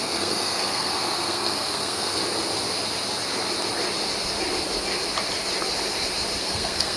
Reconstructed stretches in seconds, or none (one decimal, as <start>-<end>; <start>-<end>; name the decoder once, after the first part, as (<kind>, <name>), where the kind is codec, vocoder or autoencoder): 0.0-2.2 (codec, SNAC); 6.4-7.0

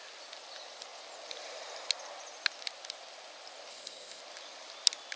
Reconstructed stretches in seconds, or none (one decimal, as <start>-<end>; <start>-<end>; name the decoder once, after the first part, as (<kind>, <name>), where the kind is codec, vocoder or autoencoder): 3.7-4.2 (codec, ZipCodec)

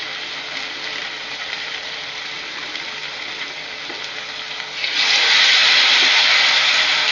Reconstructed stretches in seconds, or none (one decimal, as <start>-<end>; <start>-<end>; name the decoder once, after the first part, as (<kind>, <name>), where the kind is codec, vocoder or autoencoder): 1.0-3.9 (vocoder, BigVGAN v2)

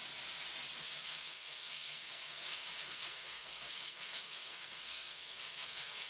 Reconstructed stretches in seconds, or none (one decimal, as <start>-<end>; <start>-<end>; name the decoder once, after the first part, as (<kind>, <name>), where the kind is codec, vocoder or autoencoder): 0.8-6.1 (codec, SNAC)

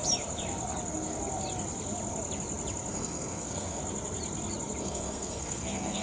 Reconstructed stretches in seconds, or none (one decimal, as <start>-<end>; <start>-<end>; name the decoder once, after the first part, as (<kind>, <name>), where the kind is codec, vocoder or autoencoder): 2.9-3.8 (codec, SNAC); 4.8-6.0

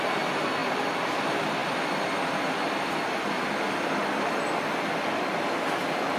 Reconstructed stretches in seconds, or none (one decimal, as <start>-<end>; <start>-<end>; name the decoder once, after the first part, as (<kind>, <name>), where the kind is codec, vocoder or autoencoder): 0.6-1.2 (vocoder, BigVGAN v2)